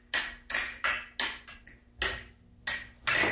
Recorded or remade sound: recorded